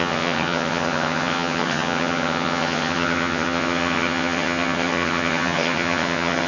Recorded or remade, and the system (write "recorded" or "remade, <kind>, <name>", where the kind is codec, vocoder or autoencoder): remade, vocoder, HiFi-GAN